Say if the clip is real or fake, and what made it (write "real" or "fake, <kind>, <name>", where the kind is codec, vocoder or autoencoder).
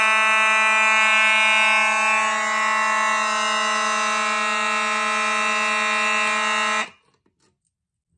real